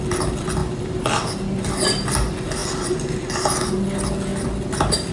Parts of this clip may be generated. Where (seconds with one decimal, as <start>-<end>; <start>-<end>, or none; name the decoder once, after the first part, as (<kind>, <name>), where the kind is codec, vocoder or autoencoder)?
none